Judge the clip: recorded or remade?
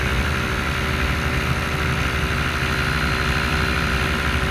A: recorded